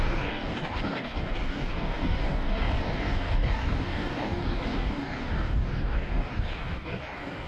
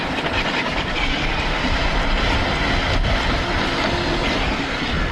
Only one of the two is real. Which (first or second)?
second